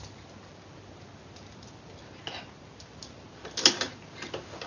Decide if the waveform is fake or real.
real